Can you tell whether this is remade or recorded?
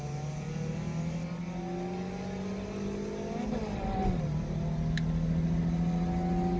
recorded